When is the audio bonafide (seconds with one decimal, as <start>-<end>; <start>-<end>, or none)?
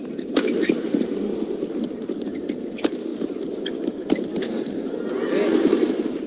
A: 0.0-1.3; 2.0-6.3